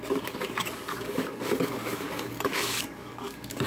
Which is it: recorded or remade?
remade